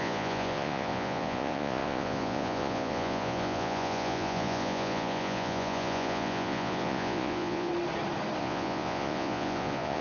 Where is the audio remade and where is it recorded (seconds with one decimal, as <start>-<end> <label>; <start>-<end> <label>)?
0.0-7.7 remade; 7.7-8.4 recorded; 8.4-10.0 remade